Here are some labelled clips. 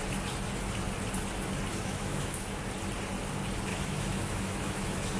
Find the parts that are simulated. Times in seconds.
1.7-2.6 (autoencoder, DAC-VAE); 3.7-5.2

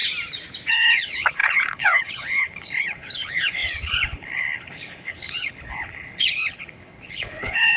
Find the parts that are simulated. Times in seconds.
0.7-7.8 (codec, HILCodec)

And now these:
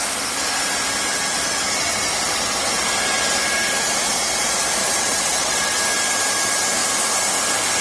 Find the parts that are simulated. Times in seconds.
4.8-5.8 (vocoder, WaveNeXt)

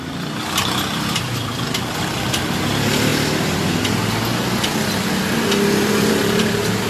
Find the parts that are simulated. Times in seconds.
none

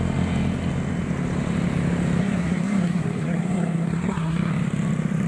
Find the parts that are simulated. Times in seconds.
2.2-4.5 (codec, SNAC)

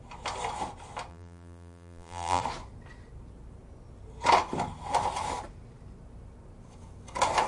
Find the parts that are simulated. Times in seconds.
1.1-2.4 (vocoder, BigVGAN v2)

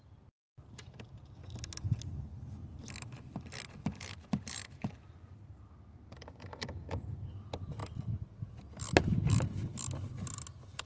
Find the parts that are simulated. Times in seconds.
none

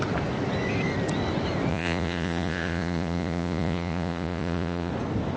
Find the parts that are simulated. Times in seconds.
1.7-4.9 (vocoder, Vocos)